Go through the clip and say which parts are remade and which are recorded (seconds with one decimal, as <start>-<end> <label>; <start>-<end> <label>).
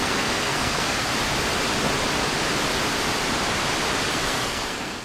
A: 0.0-1.1 remade; 1.1-4.1 recorded; 4.1-5.0 remade